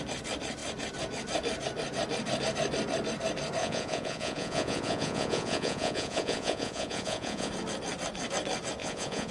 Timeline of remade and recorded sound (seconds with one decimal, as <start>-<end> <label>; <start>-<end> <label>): 0.0-3.6 recorded; 3.6-7.5 remade; 7.5-8.8 recorded; 8.8-9.3 remade